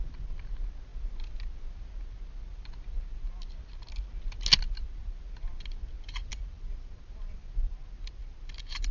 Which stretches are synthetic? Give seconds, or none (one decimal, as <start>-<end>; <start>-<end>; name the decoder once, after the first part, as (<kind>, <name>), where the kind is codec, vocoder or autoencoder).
none